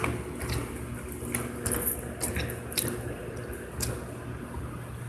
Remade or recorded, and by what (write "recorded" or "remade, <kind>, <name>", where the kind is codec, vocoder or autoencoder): recorded